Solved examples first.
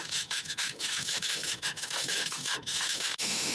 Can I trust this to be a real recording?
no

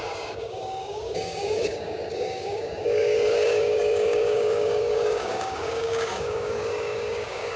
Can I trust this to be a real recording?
no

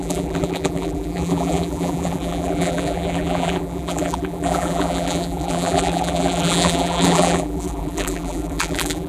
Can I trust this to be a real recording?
no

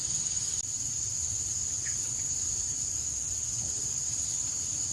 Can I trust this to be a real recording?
yes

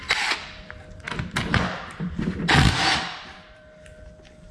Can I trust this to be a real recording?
no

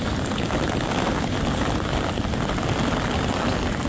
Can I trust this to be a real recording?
yes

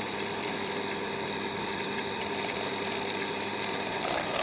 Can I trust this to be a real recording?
yes